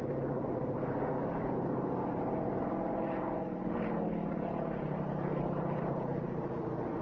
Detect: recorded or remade remade